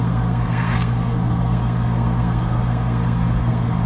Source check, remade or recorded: remade